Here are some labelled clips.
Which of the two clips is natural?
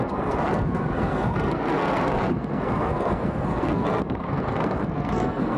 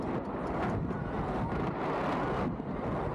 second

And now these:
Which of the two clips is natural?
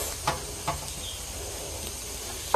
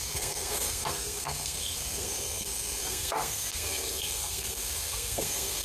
first